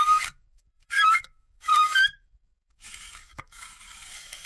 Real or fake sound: fake